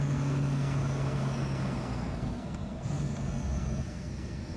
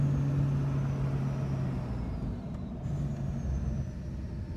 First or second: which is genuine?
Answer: second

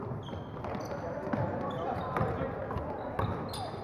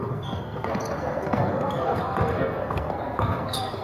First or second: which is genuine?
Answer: first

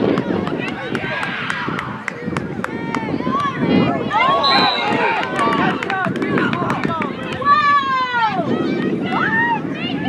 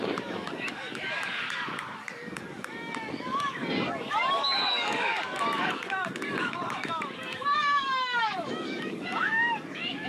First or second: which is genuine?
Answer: first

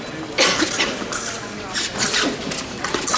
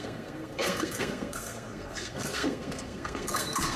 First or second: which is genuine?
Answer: first